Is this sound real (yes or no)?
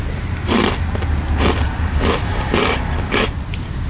yes